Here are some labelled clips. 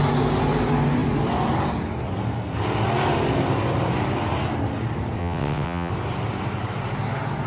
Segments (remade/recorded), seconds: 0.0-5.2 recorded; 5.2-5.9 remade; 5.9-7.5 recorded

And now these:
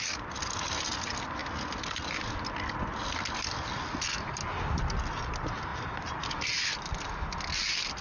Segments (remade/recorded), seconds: 0.0-8.0 recorded

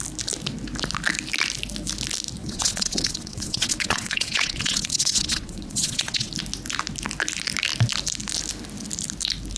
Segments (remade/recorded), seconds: 0.0-2.4 recorded; 2.4-6.3 remade; 6.3-9.6 recorded

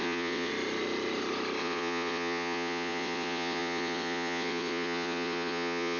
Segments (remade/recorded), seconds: 0.0-0.5 remade; 0.5-1.6 recorded; 1.6-6.0 remade